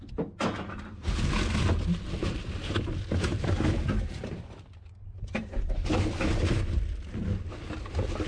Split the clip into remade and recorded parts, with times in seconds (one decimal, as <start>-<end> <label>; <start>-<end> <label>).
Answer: 0.0-2.2 recorded; 2.2-2.7 remade; 2.7-3.3 recorded; 3.3-6.1 remade; 6.1-8.3 recorded